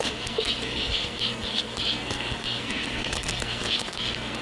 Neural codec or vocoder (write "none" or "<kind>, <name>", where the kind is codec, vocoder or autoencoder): codec, SNAC